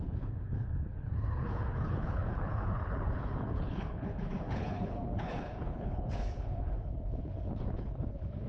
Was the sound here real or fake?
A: fake